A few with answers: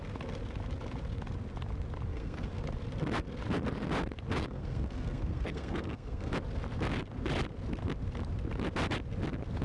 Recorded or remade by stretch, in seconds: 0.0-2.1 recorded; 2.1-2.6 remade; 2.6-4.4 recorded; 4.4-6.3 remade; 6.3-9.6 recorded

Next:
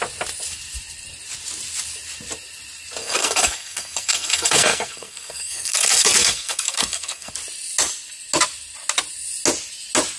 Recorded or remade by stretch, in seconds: 0.0-3.0 recorded; 3.0-7.3 remade; 7.3-10.2 recorded

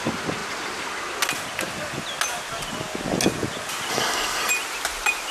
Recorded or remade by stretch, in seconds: 0.0-3.9 recorded; 3.9-4.5 remade; 4.5-5.3 recorded

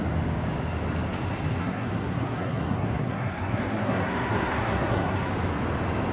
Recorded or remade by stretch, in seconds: 0.0-1.6 recorded; 1.6-5.3 remade; 5.3-6.1 recorded